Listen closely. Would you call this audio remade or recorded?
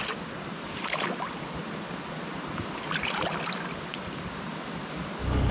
recorded